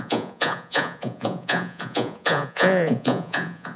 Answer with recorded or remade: remade